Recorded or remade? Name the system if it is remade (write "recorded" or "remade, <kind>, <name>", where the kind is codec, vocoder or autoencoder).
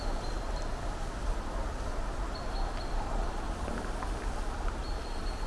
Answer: recorded